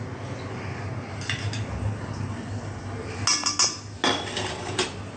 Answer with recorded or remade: recorded